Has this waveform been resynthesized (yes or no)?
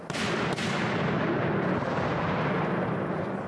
yes